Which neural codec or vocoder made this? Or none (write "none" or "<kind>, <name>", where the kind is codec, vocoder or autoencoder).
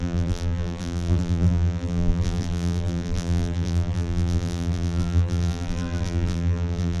vocoder, BigVGAN v2